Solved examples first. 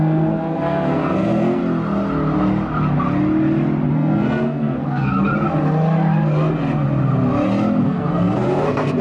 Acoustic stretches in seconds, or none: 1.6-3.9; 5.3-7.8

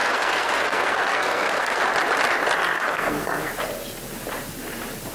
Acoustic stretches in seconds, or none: 1.8-2.7; 3.5-5.1